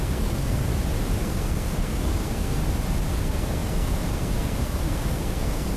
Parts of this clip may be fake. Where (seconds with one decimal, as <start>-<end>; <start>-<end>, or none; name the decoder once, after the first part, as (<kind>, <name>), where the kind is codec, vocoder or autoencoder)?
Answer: 0.0-0.7 (codec, SNAC); 1.2-2.6; 3.1-5.8